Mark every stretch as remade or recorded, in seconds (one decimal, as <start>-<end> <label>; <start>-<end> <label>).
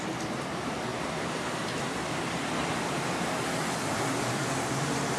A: 0.0-0.9 recorded; 0.9-3.5 remade; 3.5-5.2 recorded